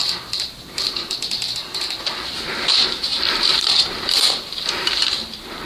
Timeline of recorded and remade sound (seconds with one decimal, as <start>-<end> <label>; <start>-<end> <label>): 0.0-2.0 remade; 2.0-3.1 recorded; 3.1-4.9 remade; 4.9-5.7 recorded